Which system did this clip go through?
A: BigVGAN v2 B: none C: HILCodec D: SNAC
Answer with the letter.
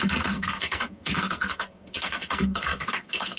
D